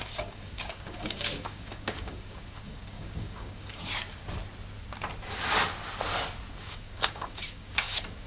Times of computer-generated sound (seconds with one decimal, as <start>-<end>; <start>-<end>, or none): 0.0-4.2; 6.5-8.3